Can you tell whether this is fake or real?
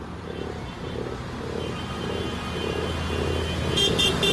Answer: real